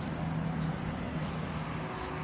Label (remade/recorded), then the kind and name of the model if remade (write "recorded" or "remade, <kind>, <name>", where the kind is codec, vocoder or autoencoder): recorded